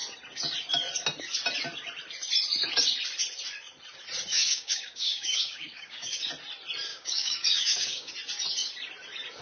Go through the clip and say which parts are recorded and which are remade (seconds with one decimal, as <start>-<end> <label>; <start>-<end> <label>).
0.0-4.3 recorded; 4.3-6.3 remade; 6.3-6.9 recorded; 6.9-8.1 remade; 8.1-9.4 recorded